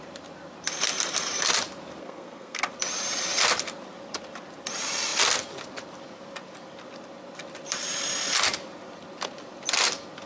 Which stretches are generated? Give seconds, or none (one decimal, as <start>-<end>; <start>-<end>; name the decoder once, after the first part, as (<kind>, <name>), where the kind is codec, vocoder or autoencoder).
2.0-2.6 (codec, SNAC)